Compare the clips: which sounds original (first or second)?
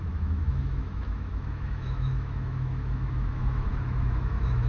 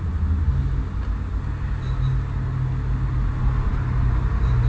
second